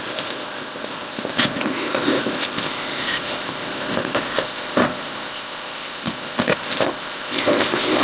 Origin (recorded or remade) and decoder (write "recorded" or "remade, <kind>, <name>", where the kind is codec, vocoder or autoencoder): remade, codec, ZipCodec